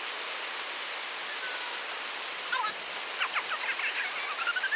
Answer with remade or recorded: recorded